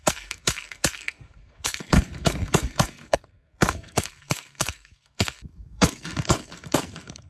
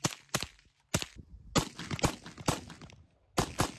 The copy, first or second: first